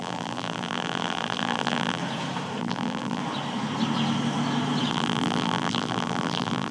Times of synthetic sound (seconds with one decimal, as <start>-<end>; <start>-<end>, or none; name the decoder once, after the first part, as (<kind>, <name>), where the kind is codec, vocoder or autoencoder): 0.0-2.0 (vocoder, BigVGAN v2); 2.6-3.2; 4.9-6.7